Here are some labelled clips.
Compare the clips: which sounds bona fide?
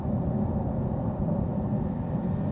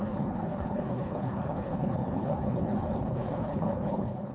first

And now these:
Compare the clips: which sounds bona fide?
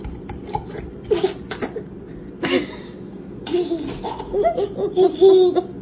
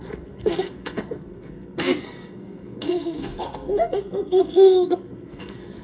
first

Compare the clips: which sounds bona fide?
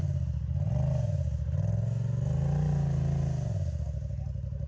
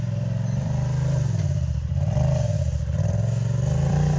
first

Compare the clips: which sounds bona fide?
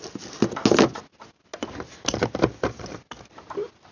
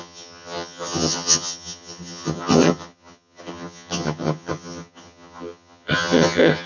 first